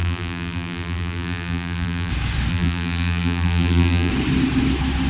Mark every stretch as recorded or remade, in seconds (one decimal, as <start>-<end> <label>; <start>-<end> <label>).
0.0-2.1 remade; 2.1-2.5 recorded; 2.5-4.1 remade; 4.1-5.1 recorded